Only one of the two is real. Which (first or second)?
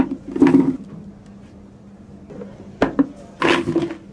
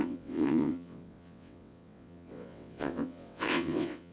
first